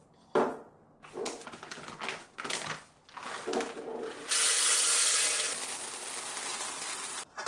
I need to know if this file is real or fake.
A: real